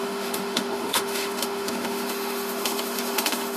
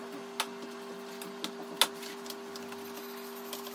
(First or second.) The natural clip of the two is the second